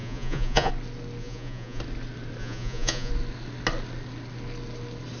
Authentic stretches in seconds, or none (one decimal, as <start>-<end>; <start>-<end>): 0.7-1.2; 1.8-2.4; 3.1-5.2